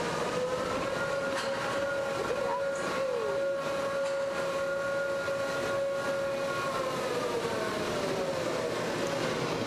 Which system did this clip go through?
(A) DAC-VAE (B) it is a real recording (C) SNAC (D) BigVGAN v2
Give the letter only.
B